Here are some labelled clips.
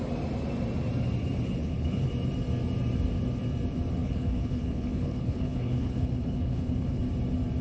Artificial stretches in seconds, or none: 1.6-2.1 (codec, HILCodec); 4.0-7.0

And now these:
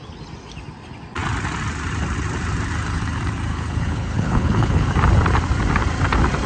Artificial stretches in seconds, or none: 3.5-4.9 (codec, HILCodec)

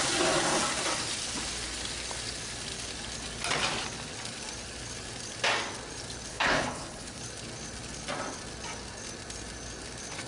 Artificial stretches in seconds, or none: 6.3-7.2 (codec, HILCodec)

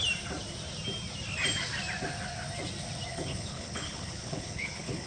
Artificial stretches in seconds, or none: 3.1-5.1 (codec, HILCodec)

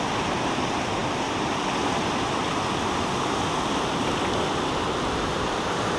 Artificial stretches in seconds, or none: none